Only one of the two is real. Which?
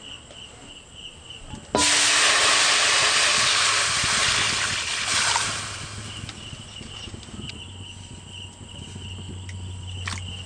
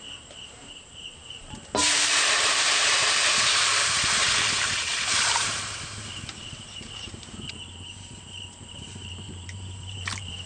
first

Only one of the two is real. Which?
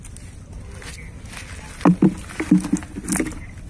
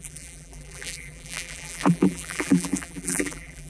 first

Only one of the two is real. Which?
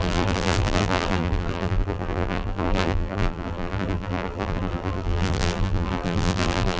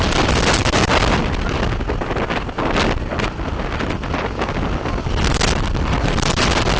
second